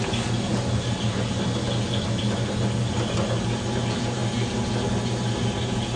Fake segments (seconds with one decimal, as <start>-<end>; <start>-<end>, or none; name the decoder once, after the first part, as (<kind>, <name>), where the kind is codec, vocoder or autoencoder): none